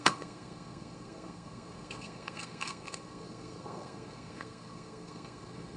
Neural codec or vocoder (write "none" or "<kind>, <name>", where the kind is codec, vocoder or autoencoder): codec, SNAC